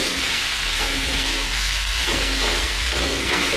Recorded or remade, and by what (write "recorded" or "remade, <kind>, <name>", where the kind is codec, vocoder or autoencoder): remade, codec, SNAC